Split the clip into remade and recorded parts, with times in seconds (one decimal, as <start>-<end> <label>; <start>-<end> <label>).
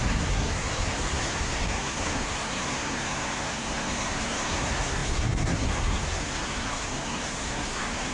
0.0-8.1 remade